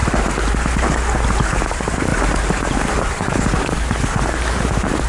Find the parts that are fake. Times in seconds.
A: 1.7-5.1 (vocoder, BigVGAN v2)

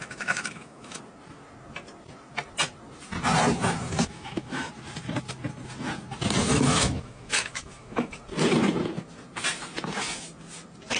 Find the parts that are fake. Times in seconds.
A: 0.0-1.0 (autoencoder, DAC-VAE); 4.0-4.7; 6.5-8.1

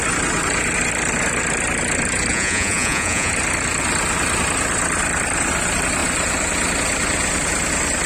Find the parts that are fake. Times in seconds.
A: 2.3-3.3 (vocoder, Vocos)